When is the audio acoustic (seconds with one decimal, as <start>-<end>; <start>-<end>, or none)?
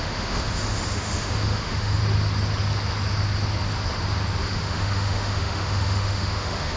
2.0-4.4